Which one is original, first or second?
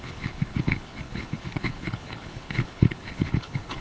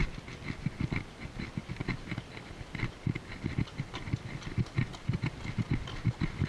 second